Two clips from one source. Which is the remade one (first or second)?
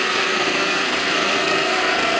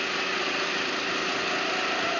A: first